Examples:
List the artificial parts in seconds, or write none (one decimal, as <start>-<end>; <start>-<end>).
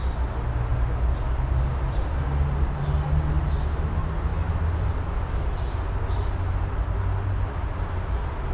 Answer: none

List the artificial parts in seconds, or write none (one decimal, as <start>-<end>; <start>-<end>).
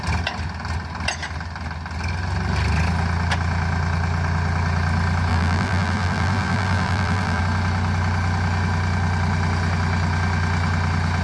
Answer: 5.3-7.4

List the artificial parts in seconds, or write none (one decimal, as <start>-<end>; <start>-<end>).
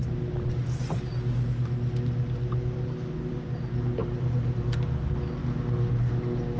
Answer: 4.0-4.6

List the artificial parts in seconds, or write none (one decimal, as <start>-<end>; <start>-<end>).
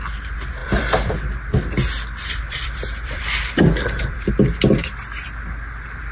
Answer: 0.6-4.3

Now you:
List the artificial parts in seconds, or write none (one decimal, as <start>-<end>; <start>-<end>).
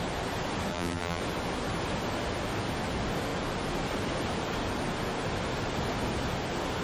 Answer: 0.7-1.2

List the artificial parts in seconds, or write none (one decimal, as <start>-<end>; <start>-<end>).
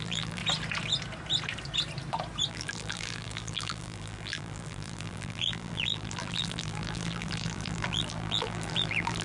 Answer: 0.0-0.4; 2.5-9.2